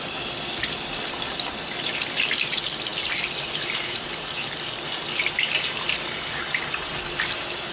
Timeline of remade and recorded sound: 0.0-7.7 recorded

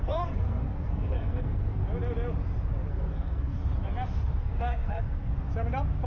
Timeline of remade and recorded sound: 0.0-1.8 remade; 1.8-2.9 recorded; 2.9-3.6 remade; 3.6-4.4 recorded; 4.4-5.3 remade; 5.3-6.1 recorded

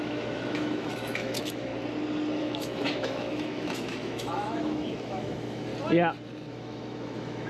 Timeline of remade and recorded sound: 0.0-1.7 remade; 1.7-2.4 recorded; 2.4-5.7 remade; 5.7-6.5 recorded; 6.5-7.5 remade